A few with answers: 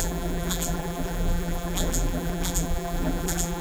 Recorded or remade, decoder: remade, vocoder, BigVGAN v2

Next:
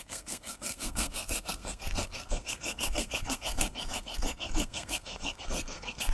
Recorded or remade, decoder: remade, codec, SNAC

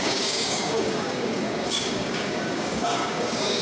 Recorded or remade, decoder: remade, codec, DAC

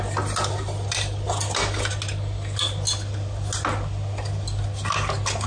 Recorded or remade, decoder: recorded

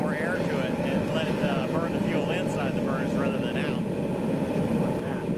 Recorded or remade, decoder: recorded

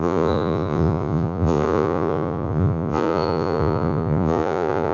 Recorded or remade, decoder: remade, vocoder, Vocos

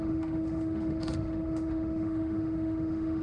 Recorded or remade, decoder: remade, autoencoder, DAC-VAE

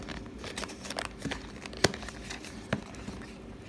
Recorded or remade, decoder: recorded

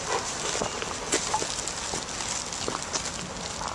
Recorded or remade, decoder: recorded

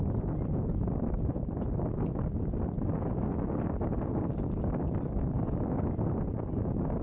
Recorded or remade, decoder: recorded